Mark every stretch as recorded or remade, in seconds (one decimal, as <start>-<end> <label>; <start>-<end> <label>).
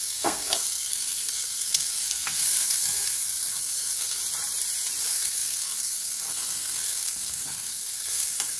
0.0-4.2 remade; 4.2-5.0 recorded; 5.0-8.6 remade